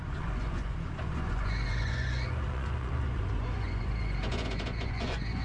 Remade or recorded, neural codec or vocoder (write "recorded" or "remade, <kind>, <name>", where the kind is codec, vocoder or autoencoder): remade, vocoder, Vocos